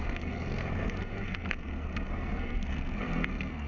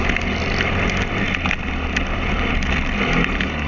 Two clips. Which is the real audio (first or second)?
second